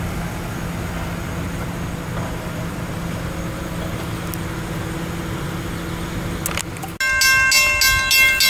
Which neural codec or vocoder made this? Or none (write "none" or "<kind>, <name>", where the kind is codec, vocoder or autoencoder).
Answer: none